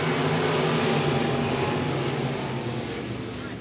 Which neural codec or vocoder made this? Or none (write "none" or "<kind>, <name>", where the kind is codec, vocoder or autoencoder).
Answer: none